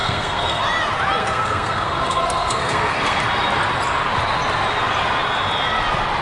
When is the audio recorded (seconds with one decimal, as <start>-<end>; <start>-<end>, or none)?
0.6-1.2; 3.2-6.2